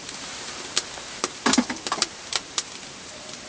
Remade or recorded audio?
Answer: remade